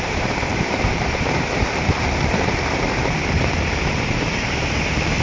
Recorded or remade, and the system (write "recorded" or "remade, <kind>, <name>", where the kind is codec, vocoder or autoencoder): remade, vocoder, BigVGAN v2